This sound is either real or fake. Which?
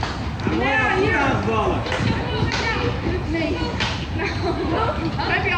real